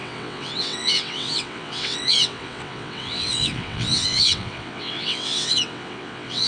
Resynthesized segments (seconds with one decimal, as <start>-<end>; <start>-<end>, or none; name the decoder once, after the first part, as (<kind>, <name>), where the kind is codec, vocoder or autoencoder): 0.0-6.5 (vocoder, WaveNeXt)